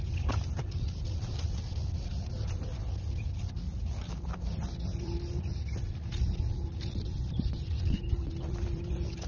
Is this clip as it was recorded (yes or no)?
yes